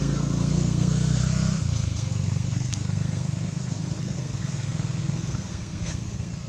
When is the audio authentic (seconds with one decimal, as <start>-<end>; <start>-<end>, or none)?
none